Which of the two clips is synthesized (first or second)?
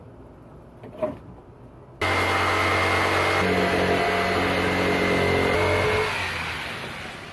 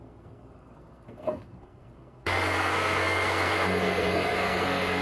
second